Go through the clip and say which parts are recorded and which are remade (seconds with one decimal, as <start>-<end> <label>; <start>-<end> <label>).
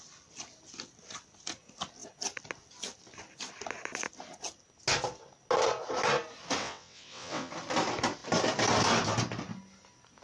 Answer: 0.0-6.6 recorded; 6.6-7.5 remade; 7.5-10.2 recorded